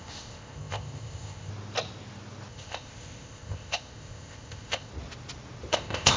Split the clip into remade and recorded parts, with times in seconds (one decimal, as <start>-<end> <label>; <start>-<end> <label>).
0.0-1.5 remade; 1.5-2.5 recorded; 2.5-4.9 remade; 4.9-5.7 recorded; 5.7-6.2 remade